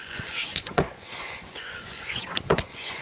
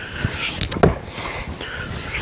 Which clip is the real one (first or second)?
second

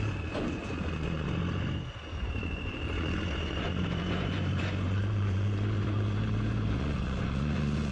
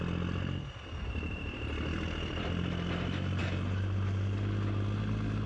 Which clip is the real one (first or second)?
second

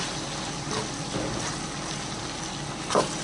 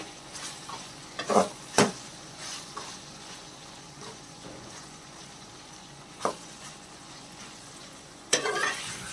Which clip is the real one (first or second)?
first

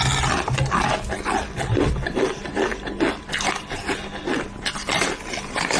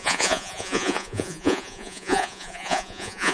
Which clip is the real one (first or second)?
first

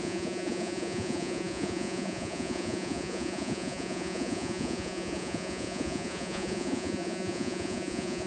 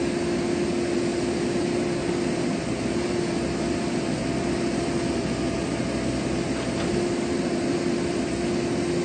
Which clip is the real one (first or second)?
second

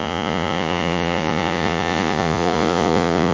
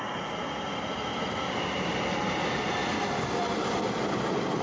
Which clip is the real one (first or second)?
second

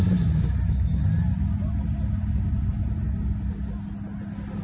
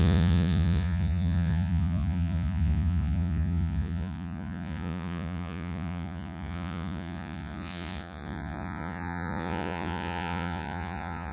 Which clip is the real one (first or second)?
first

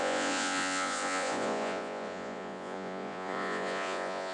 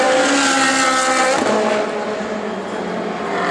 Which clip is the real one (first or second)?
second